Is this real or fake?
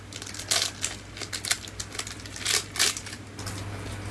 real